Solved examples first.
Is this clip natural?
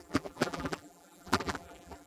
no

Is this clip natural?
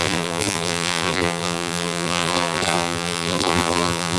no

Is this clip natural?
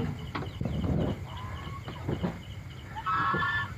yes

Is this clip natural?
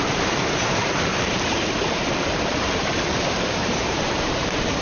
no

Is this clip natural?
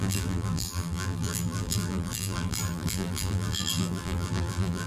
no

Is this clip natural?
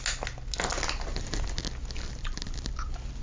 yes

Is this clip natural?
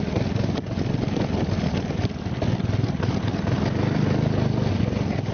yes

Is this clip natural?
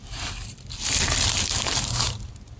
no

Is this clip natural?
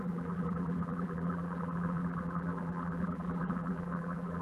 no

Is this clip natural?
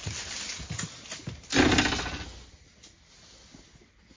yes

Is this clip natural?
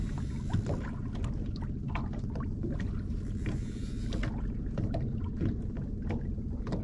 yes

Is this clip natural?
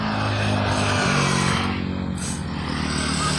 yes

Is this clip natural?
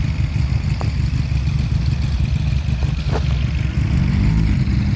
yes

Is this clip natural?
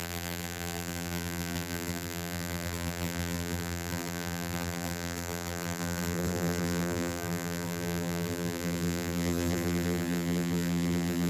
no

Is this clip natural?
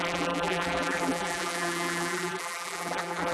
no